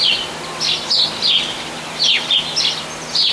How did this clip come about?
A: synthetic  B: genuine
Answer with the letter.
B